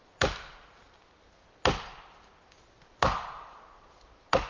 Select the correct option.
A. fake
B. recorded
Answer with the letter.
B